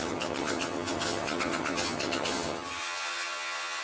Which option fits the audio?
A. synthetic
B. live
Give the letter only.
A